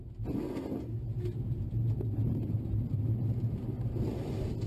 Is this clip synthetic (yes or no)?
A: no